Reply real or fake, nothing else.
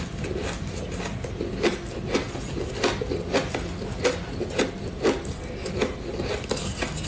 real